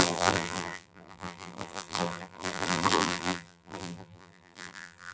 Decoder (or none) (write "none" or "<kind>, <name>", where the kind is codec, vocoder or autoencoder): vocoder, BigVGAN v2